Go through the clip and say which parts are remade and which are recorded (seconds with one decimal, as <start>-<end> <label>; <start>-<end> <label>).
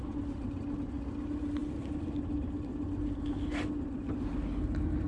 0.0-5.1 recorded